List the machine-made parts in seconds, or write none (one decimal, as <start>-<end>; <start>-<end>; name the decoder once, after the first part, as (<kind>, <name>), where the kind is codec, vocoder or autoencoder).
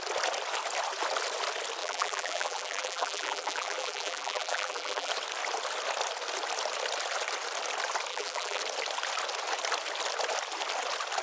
1.8-5.1 (vocoder, BigVGAN v2); 8.1-8.6